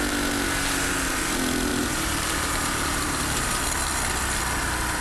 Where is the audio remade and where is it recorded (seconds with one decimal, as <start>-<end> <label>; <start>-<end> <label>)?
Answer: 0.0-1.7 recorded; 1.7-3.5 remade; 3.5-5.0 recorded